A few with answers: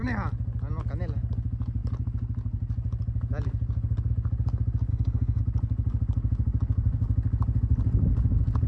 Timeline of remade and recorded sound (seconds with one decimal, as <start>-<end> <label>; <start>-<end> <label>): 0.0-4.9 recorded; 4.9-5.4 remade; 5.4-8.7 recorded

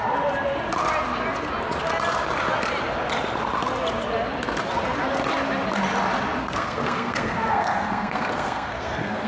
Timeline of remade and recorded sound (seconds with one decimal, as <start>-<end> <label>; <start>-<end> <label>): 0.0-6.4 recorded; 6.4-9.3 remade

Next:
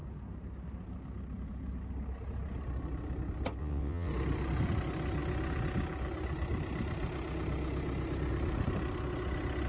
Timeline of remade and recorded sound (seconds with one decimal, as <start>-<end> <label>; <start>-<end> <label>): 0.0-3.6 recorded; 3.6-4.1 remade; 4.1-9.7 recorded